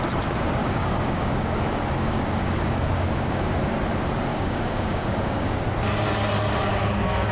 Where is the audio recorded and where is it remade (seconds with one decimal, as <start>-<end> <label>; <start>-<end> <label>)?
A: 0.0-0.6 recorded; 0.6-3.5 remade; 3.5-4.3 recorded; 4.3-5.5 remade; 5.5-6.7 recorded; 6.7-7.3 remade